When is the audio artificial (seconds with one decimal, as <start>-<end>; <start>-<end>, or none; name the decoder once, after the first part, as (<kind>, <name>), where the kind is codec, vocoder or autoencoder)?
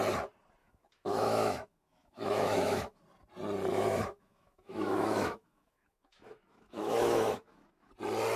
0.6-3.0 (autoencoder, DAC-VAE); 3.7-7.9